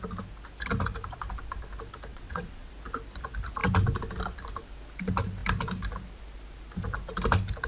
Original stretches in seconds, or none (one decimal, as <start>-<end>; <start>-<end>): 0.0-2.1; 2.7-7.7